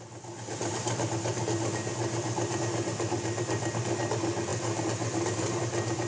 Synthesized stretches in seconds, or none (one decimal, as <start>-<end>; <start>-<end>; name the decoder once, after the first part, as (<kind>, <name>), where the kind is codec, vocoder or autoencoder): none